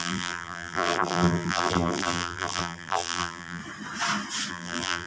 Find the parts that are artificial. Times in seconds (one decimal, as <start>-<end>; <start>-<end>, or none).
0.0-3.6; 4.5-5.1